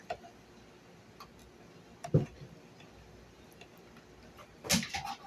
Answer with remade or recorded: recorded